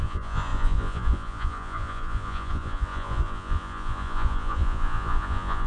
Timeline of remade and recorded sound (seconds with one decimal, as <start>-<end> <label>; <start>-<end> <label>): 0.0-5.7 remade